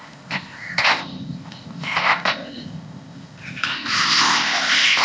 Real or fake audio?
fake